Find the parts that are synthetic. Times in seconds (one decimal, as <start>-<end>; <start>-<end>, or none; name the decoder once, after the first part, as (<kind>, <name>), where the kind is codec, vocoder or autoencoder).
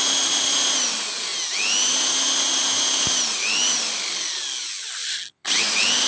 none